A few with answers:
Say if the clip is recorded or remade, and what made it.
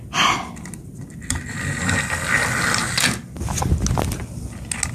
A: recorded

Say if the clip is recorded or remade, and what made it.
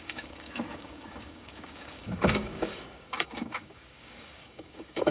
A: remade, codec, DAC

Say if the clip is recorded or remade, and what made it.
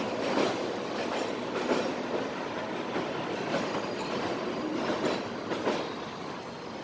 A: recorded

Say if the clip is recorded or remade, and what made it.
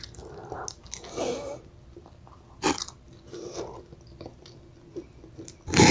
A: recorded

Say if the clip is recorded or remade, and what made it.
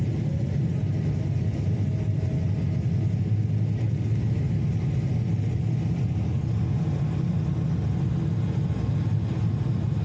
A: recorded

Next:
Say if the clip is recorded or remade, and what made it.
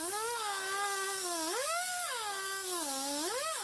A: remade, codec, DAC